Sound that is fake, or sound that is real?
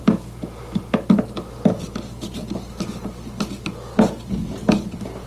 real